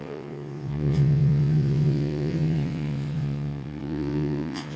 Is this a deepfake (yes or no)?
yes